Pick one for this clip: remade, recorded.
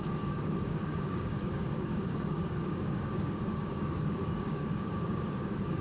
remade